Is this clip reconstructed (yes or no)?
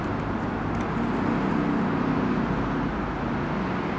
no